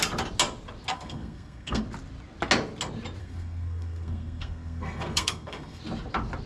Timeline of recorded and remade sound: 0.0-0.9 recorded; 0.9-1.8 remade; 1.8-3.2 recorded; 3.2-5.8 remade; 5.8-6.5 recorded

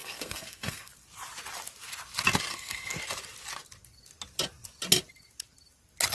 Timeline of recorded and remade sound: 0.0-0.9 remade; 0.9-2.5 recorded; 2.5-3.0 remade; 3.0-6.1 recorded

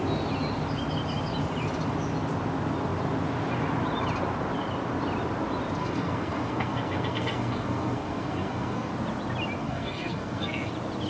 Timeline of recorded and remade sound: 0.0-5.8 recorded; 5.8-8.9 remade; 8.9-9.6 recorded; 9.6-10.7 remade; 10.7-11.1 recorded